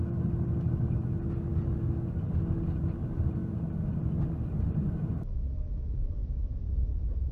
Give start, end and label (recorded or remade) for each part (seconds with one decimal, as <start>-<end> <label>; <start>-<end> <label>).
0.0-7.3 recorded